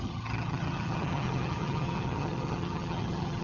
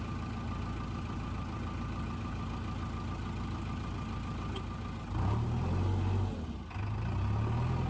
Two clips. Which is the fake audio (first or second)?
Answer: first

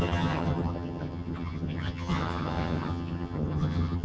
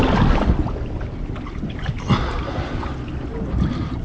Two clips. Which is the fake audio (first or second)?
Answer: first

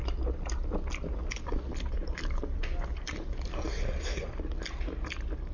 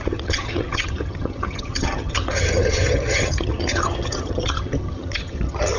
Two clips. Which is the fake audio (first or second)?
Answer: second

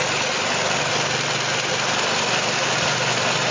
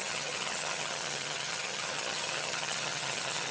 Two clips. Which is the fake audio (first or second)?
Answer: second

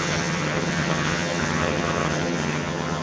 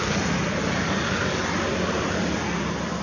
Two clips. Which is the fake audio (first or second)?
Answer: first